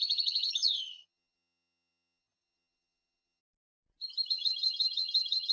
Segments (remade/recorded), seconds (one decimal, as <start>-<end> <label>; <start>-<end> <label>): 0.0-3.4 remade; 3.4-4.3 recorded; 4.3-5.5 remade

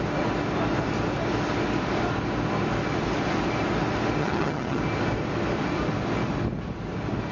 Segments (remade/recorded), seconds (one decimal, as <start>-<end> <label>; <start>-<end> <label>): 0.0-4.2 recorded; 4.2-4.8 remade; 4.8-7.3 recorded

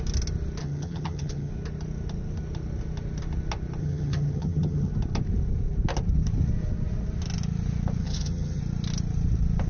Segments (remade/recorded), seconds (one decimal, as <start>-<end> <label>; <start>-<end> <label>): 0.0-0.6 recorded; 0.6-1.5 remade; 1.5-3.8 recorded; 3.8-4.9 remade; 4.9-8.0 recorded; 8.0-8.6 remade; 8.6-9.7 recorded

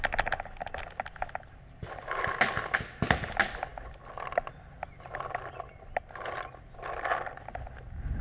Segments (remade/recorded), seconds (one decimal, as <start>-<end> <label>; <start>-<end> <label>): 0.0-8.2 recorded